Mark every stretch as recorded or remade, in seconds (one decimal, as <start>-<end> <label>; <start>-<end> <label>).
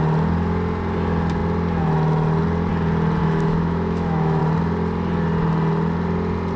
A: 0.0-3.2 recorded; 3.2-4.4 remade; 4.4-6.6 recorded